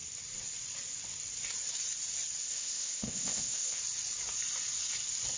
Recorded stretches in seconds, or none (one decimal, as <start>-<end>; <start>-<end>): 0.0-2.4; 3.8-5.4